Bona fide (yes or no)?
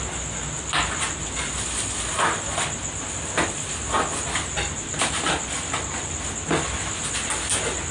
yes